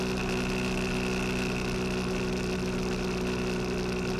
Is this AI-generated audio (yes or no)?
no